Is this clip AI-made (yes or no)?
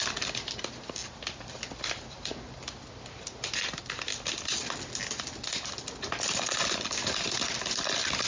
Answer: no